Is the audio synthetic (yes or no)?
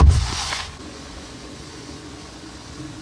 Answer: yes